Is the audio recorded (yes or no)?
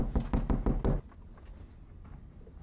yes